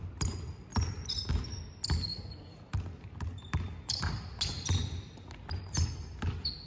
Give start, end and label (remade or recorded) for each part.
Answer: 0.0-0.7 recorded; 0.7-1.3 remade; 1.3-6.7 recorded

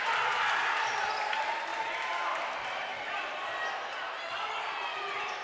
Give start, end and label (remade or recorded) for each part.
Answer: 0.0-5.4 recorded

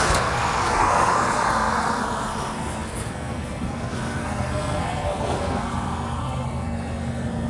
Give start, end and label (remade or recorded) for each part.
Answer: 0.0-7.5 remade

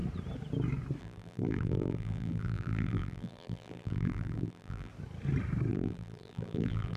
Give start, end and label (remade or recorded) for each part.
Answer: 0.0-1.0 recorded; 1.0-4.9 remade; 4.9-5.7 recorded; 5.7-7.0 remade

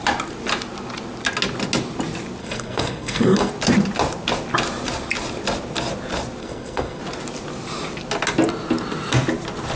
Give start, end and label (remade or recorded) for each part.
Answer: 0.0-2.4 recorded; 2.4-3.5 remade; 3.5-6.4 recorded; 6.4-7.0 remade; 7.0-9.8 recorded

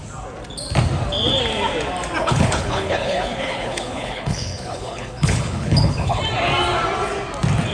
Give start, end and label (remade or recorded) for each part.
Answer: 0.0-2.2 recorded; 2.2-6.2 remade; 6.2-7.7 recorded

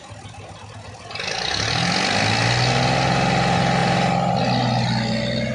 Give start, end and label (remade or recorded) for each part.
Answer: 0.0-5.5 recorded

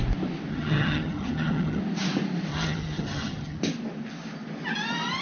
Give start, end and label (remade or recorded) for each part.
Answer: 0.0-0.5 recorded; 0.5-1.8 remade; 1.8-2.5 recorded; 2.5-3.6 remade; 3.6-5.2 recorded